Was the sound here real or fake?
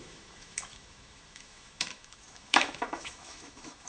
fake